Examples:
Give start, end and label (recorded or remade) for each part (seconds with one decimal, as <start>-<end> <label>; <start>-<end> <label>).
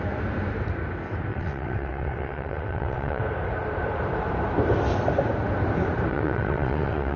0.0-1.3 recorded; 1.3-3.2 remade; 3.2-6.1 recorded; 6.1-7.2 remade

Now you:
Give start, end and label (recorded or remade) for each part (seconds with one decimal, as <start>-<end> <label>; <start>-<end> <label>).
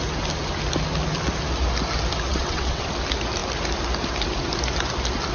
0.0-2.3 recorded; 2.3-2.9 remade; 2.9-5.3 recorded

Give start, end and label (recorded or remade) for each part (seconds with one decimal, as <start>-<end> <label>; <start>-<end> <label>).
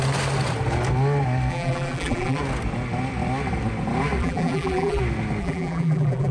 0.0-1.5 recorded; 1.5-2.4 remade; 2.4-4.2 recorded; 4.2-5.0 remade; 5.0-5.4 recorded; 5.4-6.3 remade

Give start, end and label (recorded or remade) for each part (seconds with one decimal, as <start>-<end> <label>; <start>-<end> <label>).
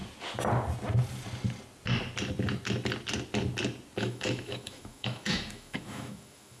0.0-4.0 recorded; 4.0-6.6 remade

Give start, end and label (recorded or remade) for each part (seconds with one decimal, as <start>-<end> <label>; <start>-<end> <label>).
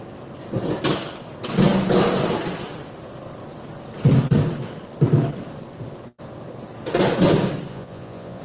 0.0-7.7 recorded; 7.7-8.4 remade